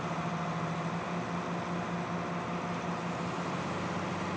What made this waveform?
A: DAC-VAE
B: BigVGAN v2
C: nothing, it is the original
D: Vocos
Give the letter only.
C